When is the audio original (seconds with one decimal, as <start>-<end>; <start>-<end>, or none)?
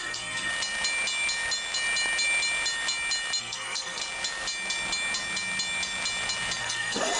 0.5-3.4; 4.0-6.6